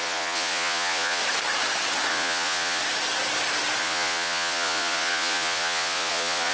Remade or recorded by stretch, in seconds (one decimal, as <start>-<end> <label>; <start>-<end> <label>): 0.0-1.2 remade; 1.2-2.1 recorded; 2.1-2.8 remade; 2.8-3.8 recorded; 3.8-6.5 remade